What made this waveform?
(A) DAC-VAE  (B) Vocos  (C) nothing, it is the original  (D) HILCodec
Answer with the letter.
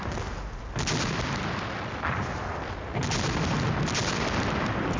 C